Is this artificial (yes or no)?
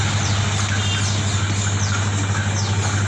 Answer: no